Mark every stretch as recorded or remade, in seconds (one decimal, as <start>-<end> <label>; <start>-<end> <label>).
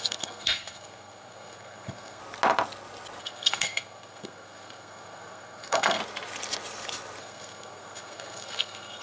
0.0-2.2 remade; 2.2-3.2 recorded; 3.2-6.0 remade; 6.0-7.2 recorded; 7.2-9.0 remade